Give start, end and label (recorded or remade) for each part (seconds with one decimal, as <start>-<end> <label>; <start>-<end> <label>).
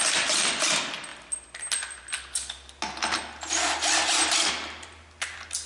0.0-5.7 recorded